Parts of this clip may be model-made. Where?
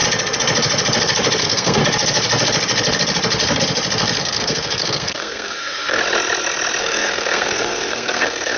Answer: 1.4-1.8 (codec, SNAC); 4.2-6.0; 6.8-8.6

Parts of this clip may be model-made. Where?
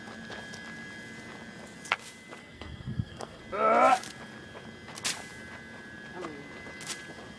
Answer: 2.4-3.4 (codec, SNAC)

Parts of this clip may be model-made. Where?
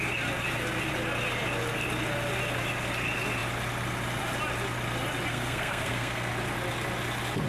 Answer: 5.3-6.3 (codec, SNAC)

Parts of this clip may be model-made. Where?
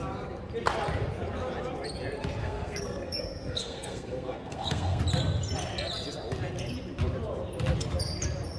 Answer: 2.4-5.0 (codec, SNAC)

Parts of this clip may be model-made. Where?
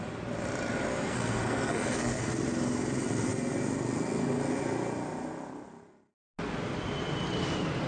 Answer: 0.9-2.3 (codec, SNAC)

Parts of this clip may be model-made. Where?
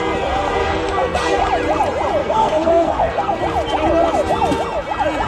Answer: 0.6-1.4 (codec, SNAC); 2.2-3.4